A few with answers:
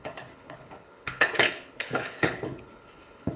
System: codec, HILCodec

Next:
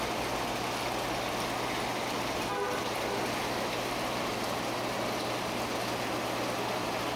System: none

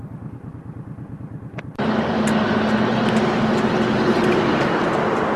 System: none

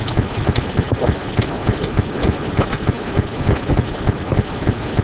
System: none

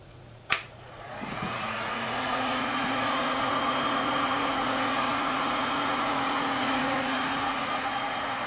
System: vocoder, Vocos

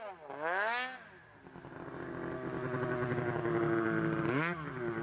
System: none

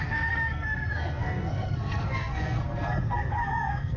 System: codec, SNAC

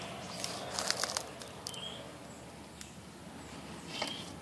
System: none